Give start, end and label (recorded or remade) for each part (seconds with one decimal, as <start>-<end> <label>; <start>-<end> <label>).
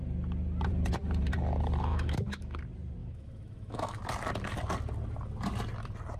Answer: 0.0-1.9 recorded; 1.9-2.6 remade; 2.6-3.0 recorded; 3.0-4.0 remade; 4.0-6.2 recorded